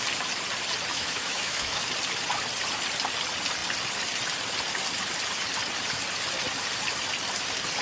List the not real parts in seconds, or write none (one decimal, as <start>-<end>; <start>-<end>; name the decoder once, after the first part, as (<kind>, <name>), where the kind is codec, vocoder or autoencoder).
0.9-1.9 (autoencoder, DAC-VAE)